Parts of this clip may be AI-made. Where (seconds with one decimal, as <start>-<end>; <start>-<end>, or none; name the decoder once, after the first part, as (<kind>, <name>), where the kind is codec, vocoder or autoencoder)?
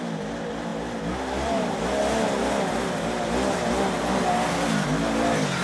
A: none